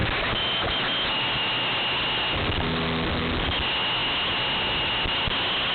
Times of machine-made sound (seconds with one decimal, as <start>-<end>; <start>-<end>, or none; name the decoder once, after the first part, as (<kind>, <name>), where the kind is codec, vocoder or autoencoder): none